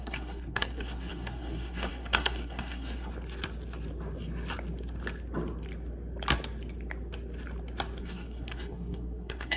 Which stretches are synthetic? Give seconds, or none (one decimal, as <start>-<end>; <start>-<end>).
0.0-3.1; 8.0-9.6